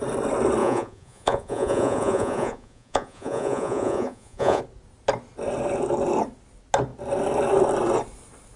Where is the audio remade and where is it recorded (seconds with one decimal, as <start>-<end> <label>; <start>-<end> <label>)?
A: 0.0-0.6 recorded; 0.6-4.6 remade; 4.6-8.6 recorded